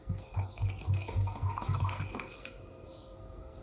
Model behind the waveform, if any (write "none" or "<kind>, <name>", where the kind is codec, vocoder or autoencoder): codec, SNAC